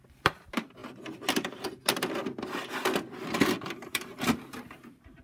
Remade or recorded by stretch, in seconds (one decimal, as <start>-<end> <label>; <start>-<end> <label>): 0.0-0.8 remade; 0.8-3.9 recorded; 3.9-5.2 remade